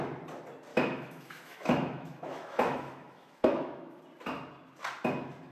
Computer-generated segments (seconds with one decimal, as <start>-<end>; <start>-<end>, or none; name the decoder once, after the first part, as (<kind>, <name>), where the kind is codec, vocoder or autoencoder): 0.7-4.0 (autoencoder, DAC-VAE)